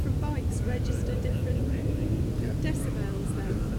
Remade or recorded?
recorded